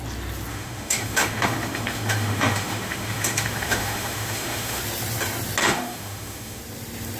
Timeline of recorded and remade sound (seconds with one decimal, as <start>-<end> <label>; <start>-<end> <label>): 0.0-0.5 recorded; 0.5-4.8 remade; 4.8-5.6 recorded; 5.6-6.6 remade; 6.6-7.2 recorded